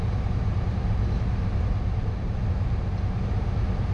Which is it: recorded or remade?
remade